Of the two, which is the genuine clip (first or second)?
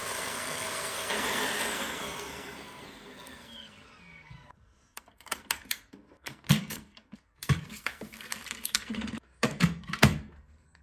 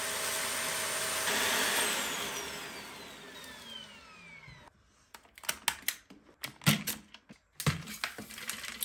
second